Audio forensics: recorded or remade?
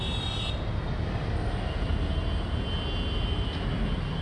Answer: recorded